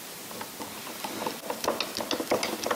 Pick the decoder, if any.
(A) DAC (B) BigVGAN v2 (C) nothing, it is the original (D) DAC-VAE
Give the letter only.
C